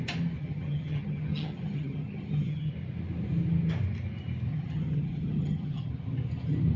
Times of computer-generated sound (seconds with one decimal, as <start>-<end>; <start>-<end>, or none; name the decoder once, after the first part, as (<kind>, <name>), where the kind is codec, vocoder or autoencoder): 0.4-2.7 (vocoder, HiFi-GAN); 4.5-5.9